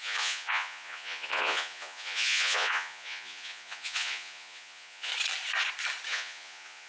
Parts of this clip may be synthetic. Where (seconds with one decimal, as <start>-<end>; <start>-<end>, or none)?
0.0-5.1; 6.1-6.9